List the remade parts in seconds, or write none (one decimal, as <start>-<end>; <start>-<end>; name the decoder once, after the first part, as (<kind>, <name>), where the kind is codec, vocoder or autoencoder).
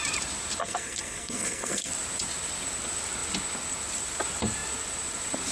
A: 0.6-1.9 (codec, SNAC)